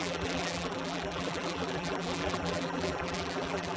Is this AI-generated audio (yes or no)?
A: yes